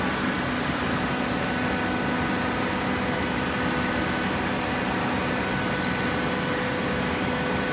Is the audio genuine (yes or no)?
yes